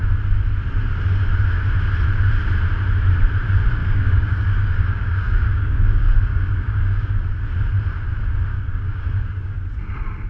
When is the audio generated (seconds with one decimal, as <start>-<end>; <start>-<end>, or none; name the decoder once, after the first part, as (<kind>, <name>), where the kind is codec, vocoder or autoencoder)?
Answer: 3.8-7.4 (codec, DAC); 8.5-9.6